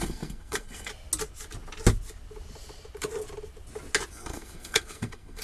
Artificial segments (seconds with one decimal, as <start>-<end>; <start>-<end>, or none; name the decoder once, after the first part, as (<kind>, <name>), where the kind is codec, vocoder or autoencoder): 0.0-0.9 (codec, SNAC); 4.1-5.4